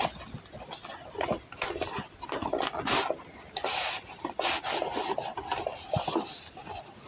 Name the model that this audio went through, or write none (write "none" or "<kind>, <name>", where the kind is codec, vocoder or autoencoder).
none